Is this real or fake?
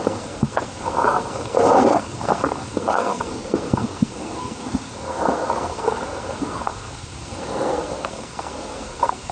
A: fake